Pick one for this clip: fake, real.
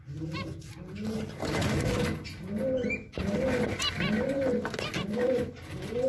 real